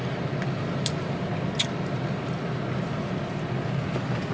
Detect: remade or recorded recorded